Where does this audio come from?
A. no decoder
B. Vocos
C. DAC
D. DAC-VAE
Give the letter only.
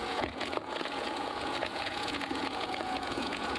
B